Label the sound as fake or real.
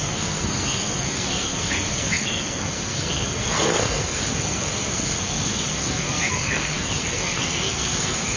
fake